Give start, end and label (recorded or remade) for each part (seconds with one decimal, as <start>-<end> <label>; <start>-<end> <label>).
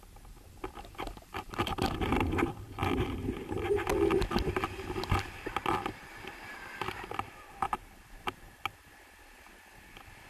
0.0-10.3 recorded